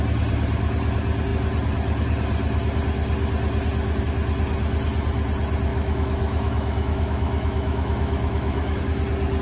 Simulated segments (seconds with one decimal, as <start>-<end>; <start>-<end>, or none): 5.7-8.8